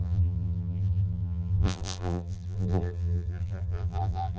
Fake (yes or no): yes